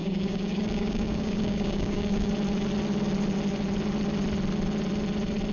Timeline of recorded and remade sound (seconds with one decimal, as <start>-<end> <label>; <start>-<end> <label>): 0.0-2.3 remade; 2.3-5.5 recorded